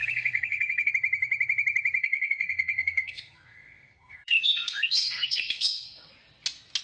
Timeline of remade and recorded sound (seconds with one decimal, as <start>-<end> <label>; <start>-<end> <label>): 0.0-0.9 remade; 0.9-2.0 recorded; 2.0-6.1 remade; 6.1-6.8 recorded